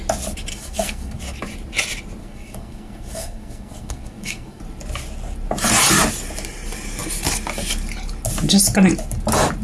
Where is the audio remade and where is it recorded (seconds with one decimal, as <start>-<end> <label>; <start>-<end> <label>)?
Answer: 0.0-0.5 recorded; 0.5-1.2 remade; 1.2-2.2 recorded; 2.2-4.6 remade; 4.6-9.6 recorded